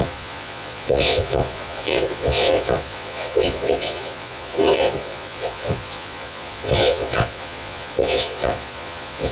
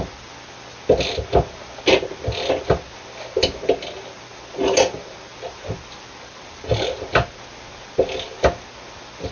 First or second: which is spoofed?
first